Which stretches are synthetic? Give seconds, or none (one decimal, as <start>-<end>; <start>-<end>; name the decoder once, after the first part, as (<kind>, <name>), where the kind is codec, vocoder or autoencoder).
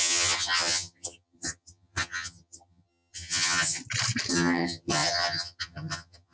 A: 0.0-3.8 (vocoder, HiFi-GAN); 4.3-6.3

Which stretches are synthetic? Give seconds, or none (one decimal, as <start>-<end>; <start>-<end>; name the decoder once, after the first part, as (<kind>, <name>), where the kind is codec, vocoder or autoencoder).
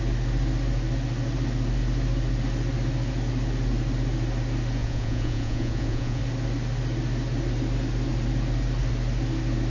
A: 4.8-6.2 (vocoder, Vocos)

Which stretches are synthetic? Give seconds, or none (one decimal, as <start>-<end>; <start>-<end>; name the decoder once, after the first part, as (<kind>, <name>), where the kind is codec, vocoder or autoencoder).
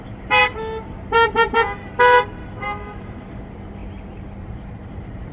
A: 0.0-3.8 (vocoder, BigVGAN v2); 4.4-5.3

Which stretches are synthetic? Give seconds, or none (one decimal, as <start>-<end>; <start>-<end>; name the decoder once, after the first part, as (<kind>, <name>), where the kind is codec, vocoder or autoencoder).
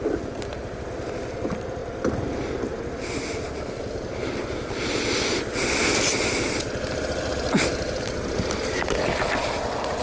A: none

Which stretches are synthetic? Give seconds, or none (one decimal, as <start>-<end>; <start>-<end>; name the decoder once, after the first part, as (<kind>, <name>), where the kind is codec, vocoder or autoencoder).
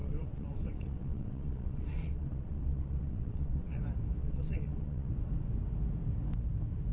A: 0.0-3.8 (vocoder, WaveNeXt); 4.2-5.1